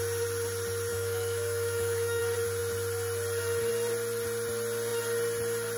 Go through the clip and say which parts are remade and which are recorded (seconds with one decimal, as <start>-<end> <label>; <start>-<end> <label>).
0.0-0.9 recorded; 0.9-2.2 remade; 2.2-5.8 recorded